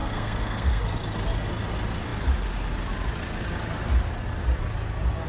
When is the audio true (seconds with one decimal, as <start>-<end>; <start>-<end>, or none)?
0.8-5.3